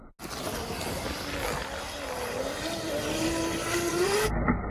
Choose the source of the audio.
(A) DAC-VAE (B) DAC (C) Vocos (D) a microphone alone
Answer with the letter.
D